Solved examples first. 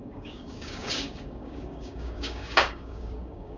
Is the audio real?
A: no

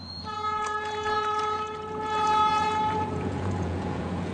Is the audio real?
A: no